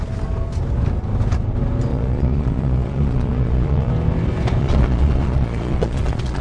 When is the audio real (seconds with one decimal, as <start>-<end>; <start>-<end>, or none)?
0.0-1.9; 3.9-4.6